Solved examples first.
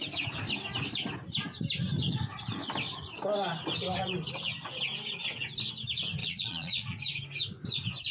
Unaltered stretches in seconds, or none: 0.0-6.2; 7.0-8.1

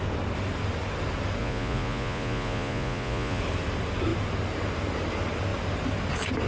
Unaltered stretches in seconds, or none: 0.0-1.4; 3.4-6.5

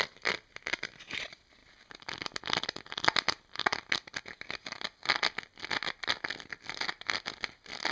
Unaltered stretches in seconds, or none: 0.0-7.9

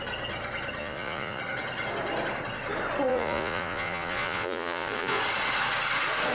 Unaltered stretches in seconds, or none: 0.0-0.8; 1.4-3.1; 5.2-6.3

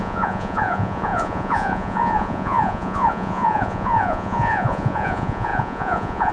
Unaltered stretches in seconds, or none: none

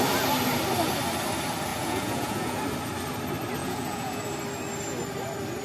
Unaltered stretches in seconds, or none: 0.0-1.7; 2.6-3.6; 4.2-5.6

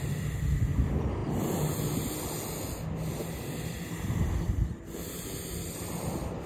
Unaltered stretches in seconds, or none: 0.0-6.5